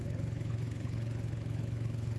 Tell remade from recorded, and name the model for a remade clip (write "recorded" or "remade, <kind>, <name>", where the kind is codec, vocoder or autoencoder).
remade, codec, HILCodec